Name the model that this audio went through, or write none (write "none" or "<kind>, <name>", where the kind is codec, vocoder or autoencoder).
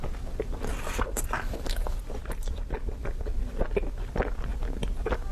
none